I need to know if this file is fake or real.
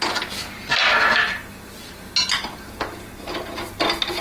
real